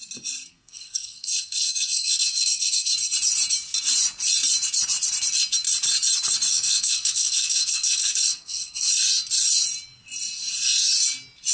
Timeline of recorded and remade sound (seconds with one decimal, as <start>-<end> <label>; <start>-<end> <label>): 0.0-0.5 recorded; 0.5-2.9 remade; 2.9-6.5 recorded; 6.5-8.9 remade; 8.9-11.5 recorded